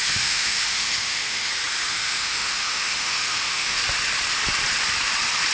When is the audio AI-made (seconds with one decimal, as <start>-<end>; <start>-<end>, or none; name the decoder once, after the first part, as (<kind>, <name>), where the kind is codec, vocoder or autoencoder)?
0.0-1.5 (autoencoder, DAC-VAE); 1.9-3.8